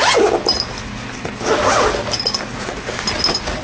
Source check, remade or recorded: recorded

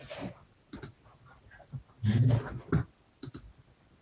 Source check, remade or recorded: recorded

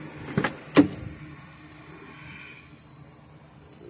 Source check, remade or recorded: recorded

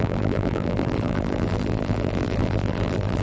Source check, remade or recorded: remade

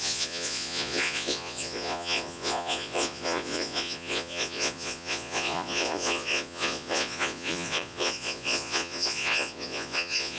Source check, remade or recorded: remade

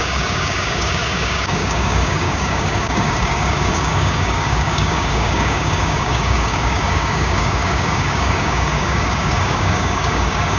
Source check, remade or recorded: remade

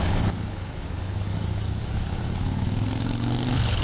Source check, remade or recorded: remade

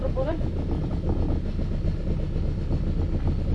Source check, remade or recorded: recorded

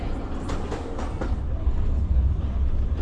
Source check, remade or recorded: recorded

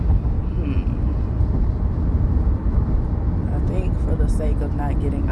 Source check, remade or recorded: recorded